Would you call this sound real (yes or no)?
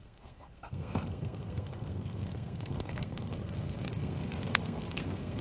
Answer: no